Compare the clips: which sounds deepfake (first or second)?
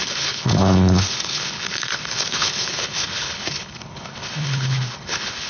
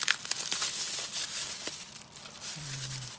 first